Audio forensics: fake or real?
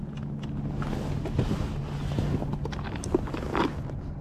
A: real